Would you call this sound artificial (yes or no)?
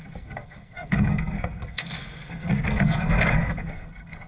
yes